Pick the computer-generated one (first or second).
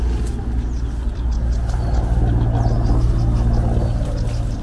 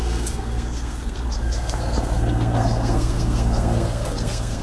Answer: second